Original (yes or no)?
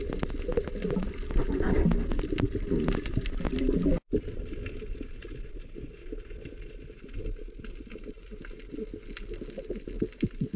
yes